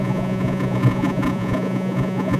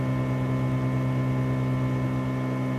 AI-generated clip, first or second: first